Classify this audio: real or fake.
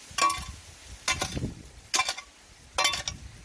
real